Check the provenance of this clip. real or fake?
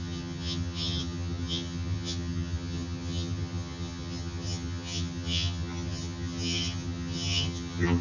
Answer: fake